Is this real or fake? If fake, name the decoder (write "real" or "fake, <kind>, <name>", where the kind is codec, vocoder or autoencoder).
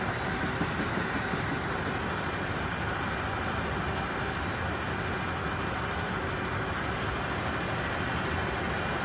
real